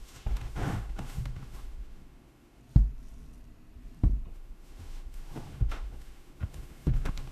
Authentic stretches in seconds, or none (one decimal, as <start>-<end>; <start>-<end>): 2.6-4.3